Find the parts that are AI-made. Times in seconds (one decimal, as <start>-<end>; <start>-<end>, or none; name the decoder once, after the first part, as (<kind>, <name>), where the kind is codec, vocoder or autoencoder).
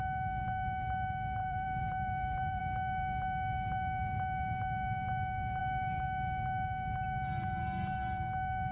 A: 1.4-2.6 (vocoder, BigVGAN v2)